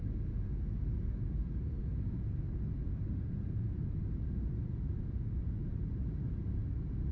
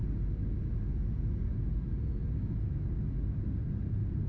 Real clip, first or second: second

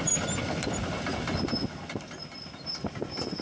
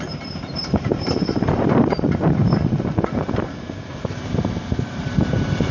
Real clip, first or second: first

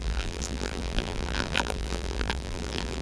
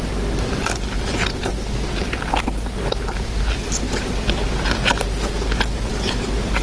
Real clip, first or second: second